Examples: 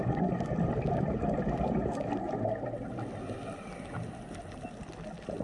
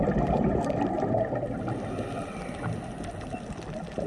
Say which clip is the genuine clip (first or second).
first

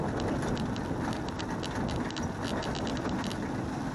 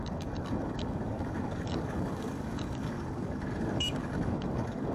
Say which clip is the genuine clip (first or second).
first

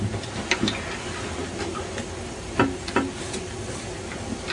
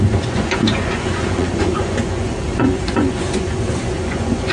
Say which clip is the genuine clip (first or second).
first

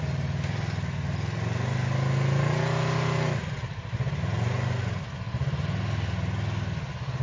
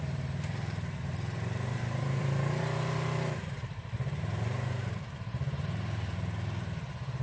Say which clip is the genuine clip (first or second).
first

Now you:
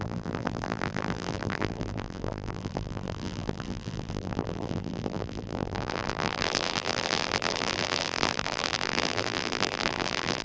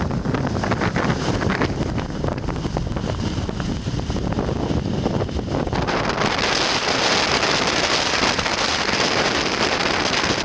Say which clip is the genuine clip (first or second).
second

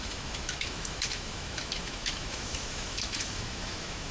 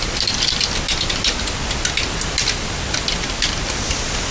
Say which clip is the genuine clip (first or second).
second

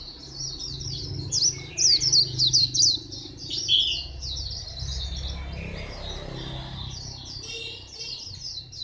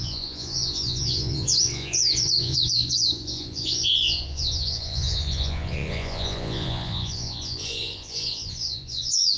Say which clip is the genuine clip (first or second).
first